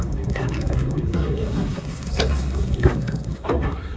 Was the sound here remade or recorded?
remade